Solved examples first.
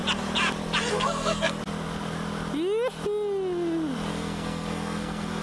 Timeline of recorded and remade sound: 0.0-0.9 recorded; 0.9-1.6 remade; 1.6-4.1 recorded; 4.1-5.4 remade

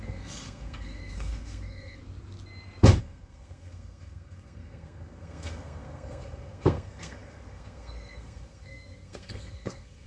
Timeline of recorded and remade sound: 0.0-2.0 remade; 2.0-3.0 recorded; 3.0-10.1 remade

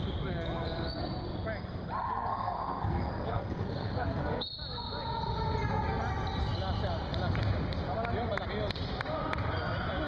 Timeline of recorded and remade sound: 0.0-2.3 recorded; 2.3-4.4 remade; 4.4-10.1 recorded

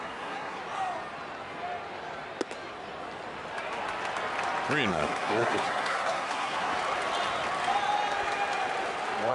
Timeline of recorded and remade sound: 0.0-0.6 remade; 0.6-4.9 recorded; 4.9-6.7 remade; 6.7-9.3 recorded

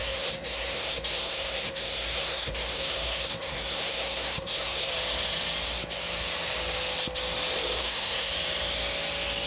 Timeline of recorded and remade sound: 0.0-4.9 remade; 4.9-7.8 recorded; 7.8-8.3 remade; 8.3-9.5 recorded

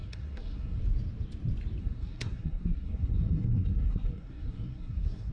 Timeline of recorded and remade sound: 0.0-0.8 remade; 0.8-1.8 recorded; 1.8-5.3 remade

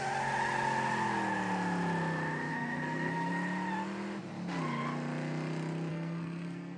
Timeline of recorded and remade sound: 0.0-2.5 recorded; 2.5-3.3 remade; 3.3-5.9 recorded; 5.9-6.8 remade